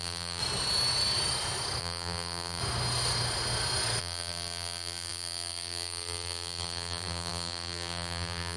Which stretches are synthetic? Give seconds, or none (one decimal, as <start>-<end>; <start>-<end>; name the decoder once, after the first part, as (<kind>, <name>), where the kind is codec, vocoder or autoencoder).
0.0-0.4 (vocoder, BigVGAN v2); 1.8-2.6; 4.0-8.6